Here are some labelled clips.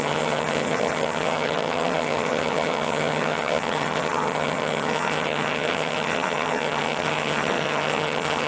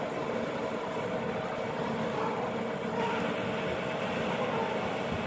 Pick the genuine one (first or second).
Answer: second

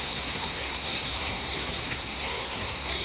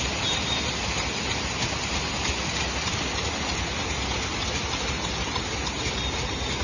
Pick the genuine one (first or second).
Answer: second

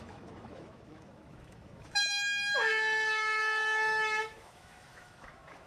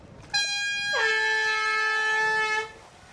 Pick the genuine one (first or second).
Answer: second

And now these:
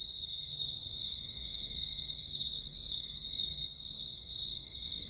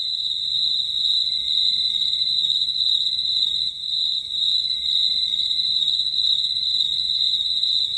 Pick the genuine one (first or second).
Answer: second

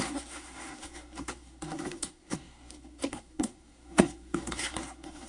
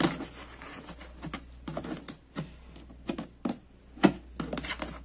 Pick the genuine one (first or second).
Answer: second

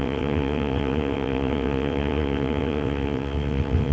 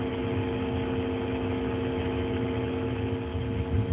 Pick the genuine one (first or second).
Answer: second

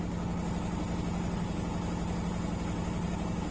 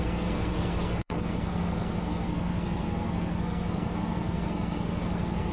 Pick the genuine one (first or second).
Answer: first